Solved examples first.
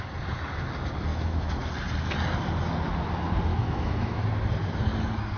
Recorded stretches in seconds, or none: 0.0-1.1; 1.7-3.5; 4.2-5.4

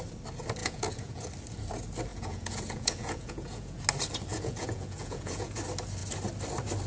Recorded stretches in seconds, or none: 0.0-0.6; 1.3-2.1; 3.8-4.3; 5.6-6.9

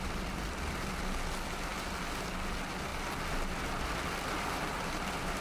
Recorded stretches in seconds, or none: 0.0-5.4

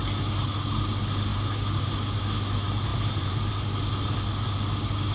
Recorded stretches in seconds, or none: 0.0-1.3; 1.9-2.9; 3.5-5.1

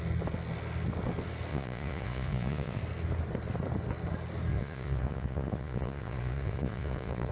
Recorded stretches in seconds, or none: 0.0-1.5; 2.8-4.5

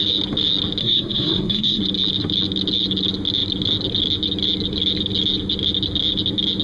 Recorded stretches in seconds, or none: 0.0-0.8; 1.8-6.6

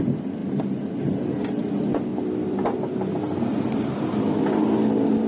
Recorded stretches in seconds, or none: 0.0-0.4; 1.0-5.3